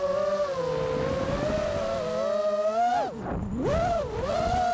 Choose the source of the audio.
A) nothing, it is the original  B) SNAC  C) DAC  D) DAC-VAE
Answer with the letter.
A